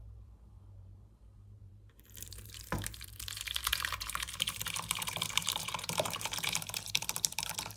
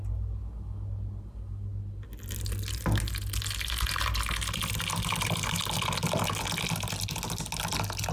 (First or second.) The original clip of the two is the second